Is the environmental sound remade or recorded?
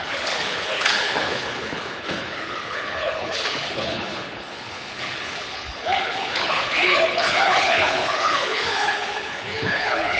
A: remade